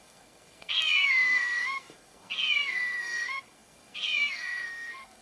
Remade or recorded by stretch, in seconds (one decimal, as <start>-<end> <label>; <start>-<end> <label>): 0.0-5.2 remade